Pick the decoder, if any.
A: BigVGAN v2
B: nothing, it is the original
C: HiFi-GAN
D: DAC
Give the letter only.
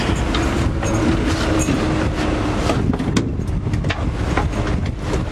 B